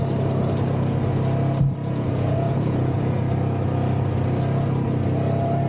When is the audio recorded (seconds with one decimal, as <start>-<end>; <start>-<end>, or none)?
0.0-1.8; 3.0-5.7